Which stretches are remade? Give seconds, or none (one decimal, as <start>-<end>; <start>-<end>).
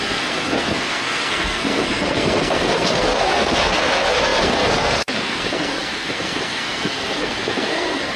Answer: 0.0-8.2